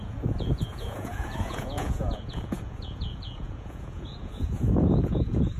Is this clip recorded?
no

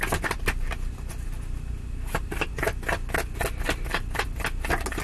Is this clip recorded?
yes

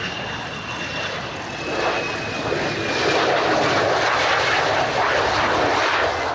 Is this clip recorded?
yes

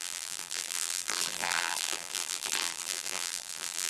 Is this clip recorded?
no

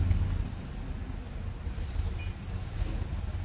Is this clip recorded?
yes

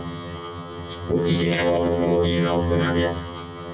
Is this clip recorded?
no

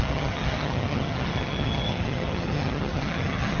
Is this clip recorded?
no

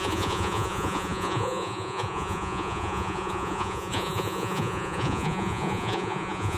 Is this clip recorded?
no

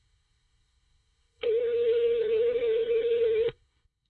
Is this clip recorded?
no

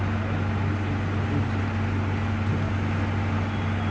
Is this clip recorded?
yes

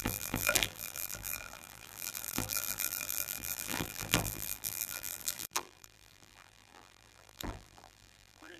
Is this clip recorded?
no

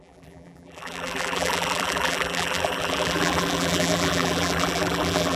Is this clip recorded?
no